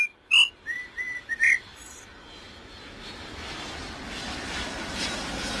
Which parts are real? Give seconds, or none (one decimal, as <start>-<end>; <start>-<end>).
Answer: 0.0-5.6